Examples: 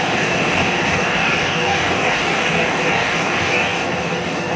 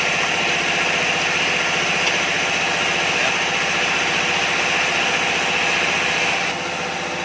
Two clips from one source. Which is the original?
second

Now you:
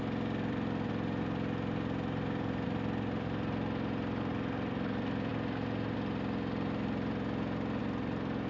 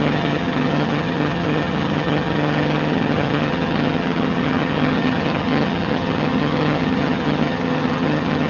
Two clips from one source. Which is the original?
first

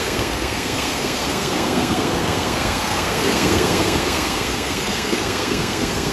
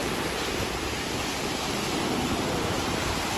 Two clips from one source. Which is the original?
second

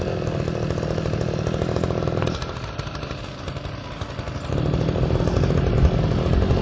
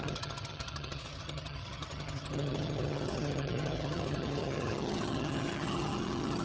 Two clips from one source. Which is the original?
first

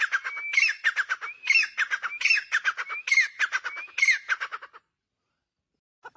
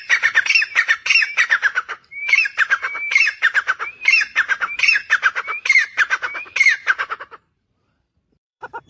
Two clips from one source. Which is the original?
first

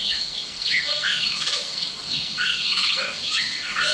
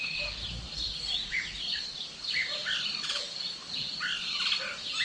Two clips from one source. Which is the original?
second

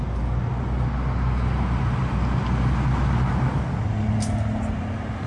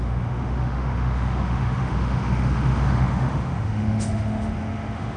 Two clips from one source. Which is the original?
first